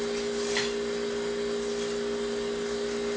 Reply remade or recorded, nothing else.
recorded